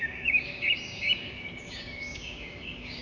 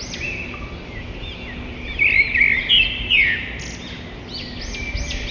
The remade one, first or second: first